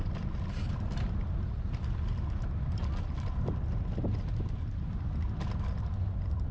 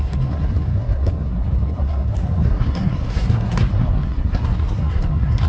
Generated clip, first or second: second